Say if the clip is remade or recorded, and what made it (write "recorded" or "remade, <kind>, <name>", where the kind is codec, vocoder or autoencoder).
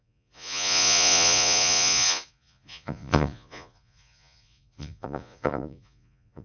remade, vocoder, Vocos